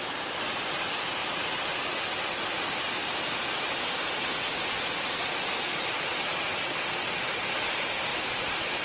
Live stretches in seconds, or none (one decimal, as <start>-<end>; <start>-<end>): 0.0-8.1